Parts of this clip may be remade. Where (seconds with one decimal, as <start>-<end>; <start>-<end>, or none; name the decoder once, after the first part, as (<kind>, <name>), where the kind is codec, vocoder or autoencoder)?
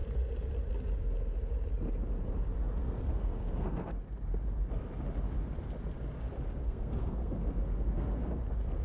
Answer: 2.8-4.0 (codec, SNAC); 6.6-8.4